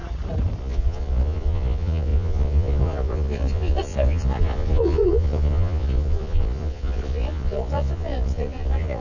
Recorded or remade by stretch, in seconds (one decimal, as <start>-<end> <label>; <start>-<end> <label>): 0.0-0.6 recorded; 0.6-9.0 remade